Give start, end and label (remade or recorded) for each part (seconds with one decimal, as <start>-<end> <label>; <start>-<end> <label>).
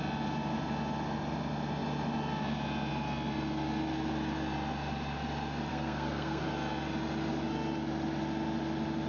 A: 0.0-5.7 recorded; 5.7-6.4 remade; 6.4-9.1 recorded